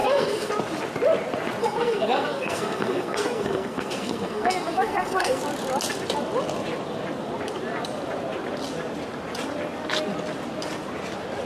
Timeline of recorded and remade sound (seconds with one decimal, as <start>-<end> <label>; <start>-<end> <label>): 0.0-0.5 remade; 0.5-1.6 recorded; 1.6-5.4 remade; 5.4-11.5 recorded